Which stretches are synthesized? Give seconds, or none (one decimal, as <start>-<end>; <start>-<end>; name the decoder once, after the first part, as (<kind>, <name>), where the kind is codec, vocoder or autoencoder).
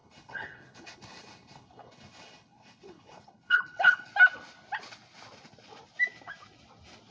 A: 0.0-4.1 (codec, HILCodec)